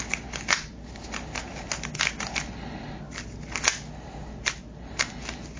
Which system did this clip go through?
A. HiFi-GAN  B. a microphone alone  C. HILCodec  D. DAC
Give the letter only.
B